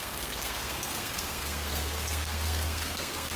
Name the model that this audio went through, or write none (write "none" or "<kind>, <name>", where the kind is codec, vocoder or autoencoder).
codec, SNAC